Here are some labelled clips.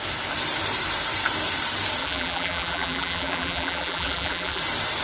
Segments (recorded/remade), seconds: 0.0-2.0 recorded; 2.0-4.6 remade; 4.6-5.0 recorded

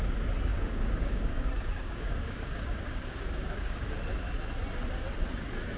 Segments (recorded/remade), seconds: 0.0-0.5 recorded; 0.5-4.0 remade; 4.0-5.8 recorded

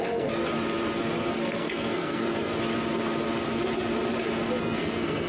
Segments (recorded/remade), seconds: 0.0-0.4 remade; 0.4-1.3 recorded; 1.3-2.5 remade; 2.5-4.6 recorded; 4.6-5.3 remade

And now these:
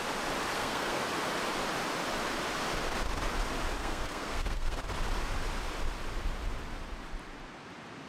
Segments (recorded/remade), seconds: 0.0-0.5 recorded; 0.5-1.0 remade; 1.0-3.8 recorded; 3.8-4.8 remade; 4.8-8.1 recorded

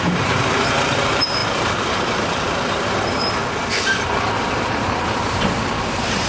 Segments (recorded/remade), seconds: 0.0-3.4 remade; 3.4-4.4 recorded; 4.4-6.3 remade

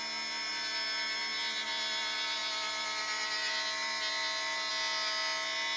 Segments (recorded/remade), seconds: 0.0-5.8 recorded

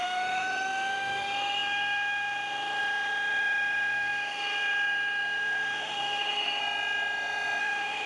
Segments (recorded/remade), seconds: 0.0-6.6 remade; 6.6-7.6 recorded; 7.6-8.1 remade

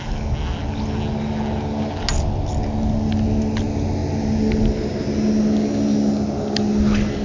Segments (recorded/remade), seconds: 0.0-7.2 recorded